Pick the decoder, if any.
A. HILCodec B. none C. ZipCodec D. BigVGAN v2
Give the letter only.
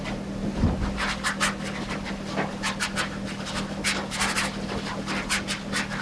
B